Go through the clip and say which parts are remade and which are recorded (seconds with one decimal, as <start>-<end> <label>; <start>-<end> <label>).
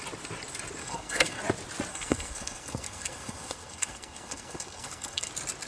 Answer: 0.0-0.8 recorded; 0.8-1.4 remade; 1.4-1.9 recorded; 1.9-5.3 remade; 5.3-5.7 recorded